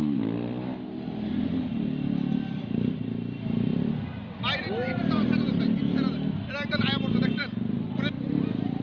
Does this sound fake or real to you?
real